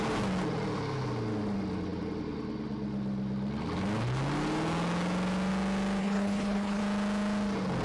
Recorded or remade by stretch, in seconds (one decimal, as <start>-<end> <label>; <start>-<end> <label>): 0.0-6.0 recorded; 6.0-6.8 remade; 6.8-7.8 recorded